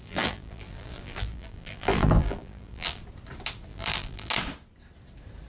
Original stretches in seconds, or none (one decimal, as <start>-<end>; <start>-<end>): 3.0-3.7; 4.3-5.5